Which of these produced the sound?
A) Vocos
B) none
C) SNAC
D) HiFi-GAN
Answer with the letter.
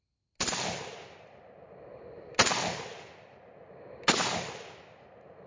B